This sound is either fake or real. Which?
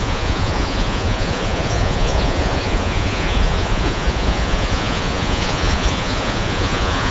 fake